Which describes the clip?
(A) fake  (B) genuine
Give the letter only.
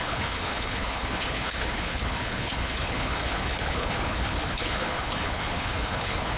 A